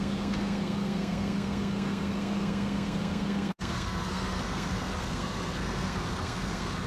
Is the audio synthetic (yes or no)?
yes